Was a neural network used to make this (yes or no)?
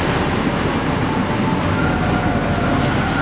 no